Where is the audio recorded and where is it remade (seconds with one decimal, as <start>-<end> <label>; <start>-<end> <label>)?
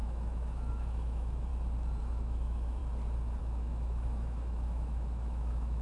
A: 0.0-1.5 remade; 1.5-2.0 recorded; 2.0-2.8 remade; 2.8-3.4 recorded; 3.4-5.8 remade